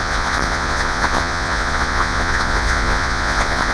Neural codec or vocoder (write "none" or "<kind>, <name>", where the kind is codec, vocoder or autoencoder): vocoder, Vocos